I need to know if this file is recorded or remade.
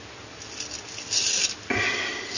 recorded